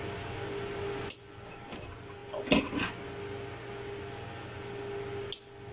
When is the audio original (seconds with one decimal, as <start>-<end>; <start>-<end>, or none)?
0.0-5.7